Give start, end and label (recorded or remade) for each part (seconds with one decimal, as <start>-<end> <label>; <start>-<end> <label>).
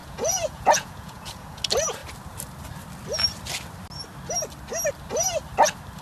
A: 0.0-1.6 remade; 1.6-6.0 recorded